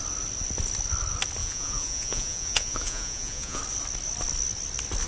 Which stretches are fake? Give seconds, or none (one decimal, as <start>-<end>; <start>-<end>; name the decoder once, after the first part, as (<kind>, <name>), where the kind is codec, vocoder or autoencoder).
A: 1.4-3.6 (vocoder, Vocos)

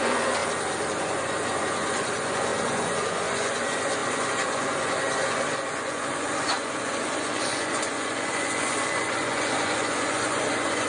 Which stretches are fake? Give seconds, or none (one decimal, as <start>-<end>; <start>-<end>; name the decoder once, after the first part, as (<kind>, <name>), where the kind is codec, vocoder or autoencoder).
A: 0.0-0.4 (vocoder, Vocos); 1.0-10.9

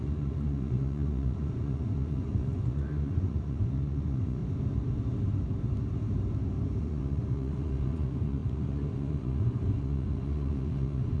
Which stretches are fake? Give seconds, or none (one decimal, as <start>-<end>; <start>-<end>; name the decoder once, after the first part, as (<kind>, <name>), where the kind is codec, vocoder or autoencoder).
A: 0.0-4.4 (vocoder, Vocos); 6.8-11.2